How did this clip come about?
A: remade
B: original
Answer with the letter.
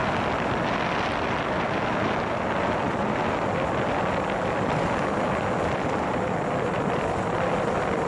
B